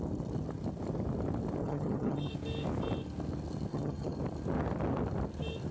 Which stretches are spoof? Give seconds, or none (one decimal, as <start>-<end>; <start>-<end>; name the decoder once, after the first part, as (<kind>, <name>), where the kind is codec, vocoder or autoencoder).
1.6-2.3 (vocoder, HiFi-GAN); 3.7-4.2